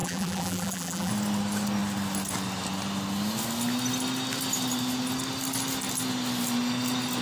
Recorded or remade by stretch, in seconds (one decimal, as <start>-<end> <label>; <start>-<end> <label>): 0.0-1.1 remade; 1.1-7.2 recorded